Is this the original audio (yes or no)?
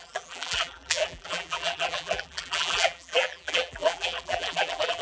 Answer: no